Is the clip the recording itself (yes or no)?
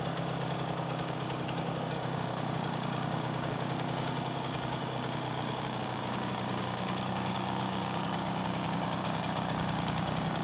no